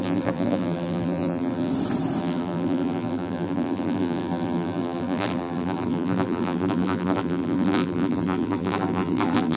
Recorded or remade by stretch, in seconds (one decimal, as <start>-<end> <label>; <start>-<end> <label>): 0.0-1.7 remade; 1.7-2.2 recorded; 2.2-9.6 remade